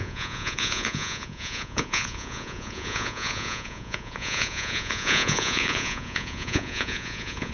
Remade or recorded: remade